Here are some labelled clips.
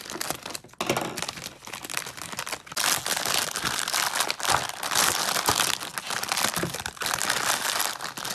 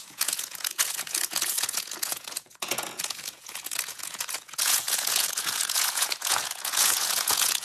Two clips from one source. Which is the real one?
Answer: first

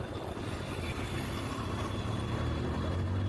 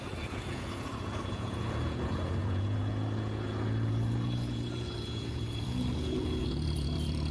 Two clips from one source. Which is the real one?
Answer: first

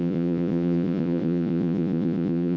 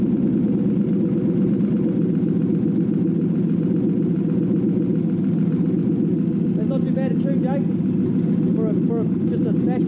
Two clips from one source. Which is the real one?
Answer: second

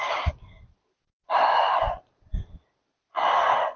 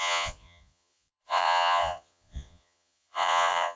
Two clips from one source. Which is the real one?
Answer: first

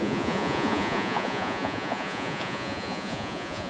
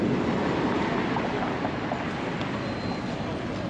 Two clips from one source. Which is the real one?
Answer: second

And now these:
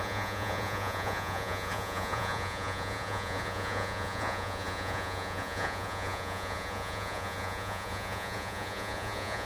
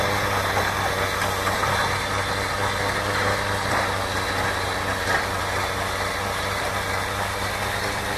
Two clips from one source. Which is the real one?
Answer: second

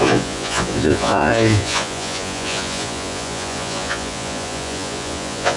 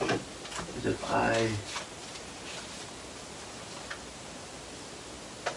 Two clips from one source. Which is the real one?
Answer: second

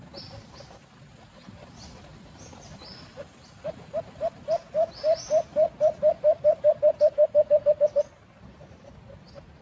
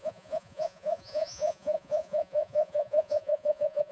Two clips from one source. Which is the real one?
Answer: first